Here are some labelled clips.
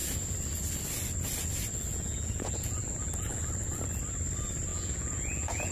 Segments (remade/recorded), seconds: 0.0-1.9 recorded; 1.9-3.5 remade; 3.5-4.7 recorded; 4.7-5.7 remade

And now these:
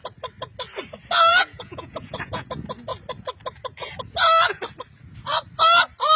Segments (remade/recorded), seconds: 0.0-1.3 recorded; 1.3-2.5 remade; 2.5-6.2 recorded

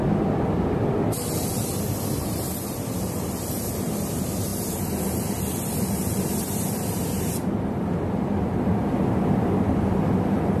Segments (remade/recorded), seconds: 0.0-4.5 remade; 4.5-5.4 recorded; 5.4-10.6 remade

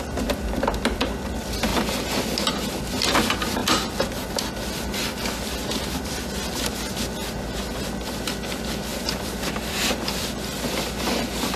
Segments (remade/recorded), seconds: 0.0-8.9 recorded; 8.9-11.0 remade; 11.0-11.6 recorded

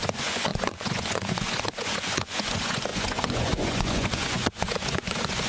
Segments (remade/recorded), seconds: 0.0-5.5 remade

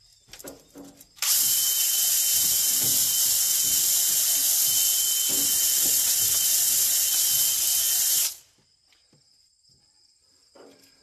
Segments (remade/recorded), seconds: 0.0-2.3 recorded; 2.3-3.2 remade; 3.2-11.0 recorded

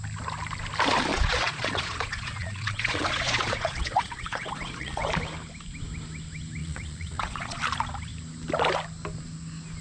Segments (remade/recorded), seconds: 0.0-1.1 recorded; 1.1-5.0 remade; 5.0-6.6 recorded; 6.6-7.6 remade; 7.6-9.8 recorded